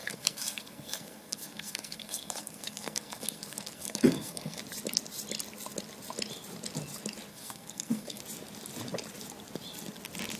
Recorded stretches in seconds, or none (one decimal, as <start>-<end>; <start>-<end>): 4.6-7.3; 8.2-10.4